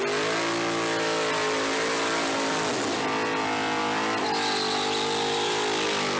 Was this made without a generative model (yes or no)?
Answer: yes